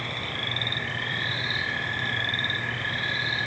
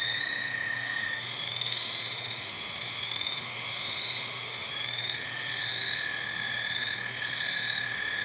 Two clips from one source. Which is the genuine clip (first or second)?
first